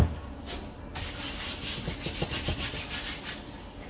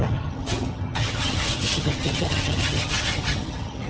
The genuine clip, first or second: first